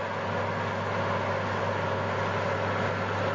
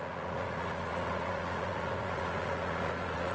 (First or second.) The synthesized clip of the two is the second